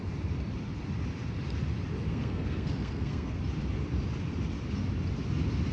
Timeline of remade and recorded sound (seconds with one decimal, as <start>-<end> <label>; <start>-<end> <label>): 0.0-2.1 recorded; 2.1-3.4 remade; 3.4-5.7 recorded